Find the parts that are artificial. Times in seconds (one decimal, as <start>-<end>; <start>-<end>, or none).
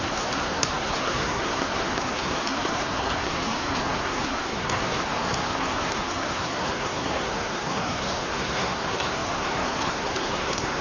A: 0.0-10.8